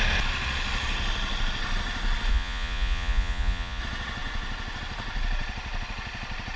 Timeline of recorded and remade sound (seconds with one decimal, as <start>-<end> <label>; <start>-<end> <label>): 0.0-2.3 recorded; 2.3-3.8 remade; 3.8-6.6 recorded